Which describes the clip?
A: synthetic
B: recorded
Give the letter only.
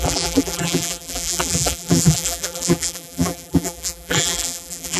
A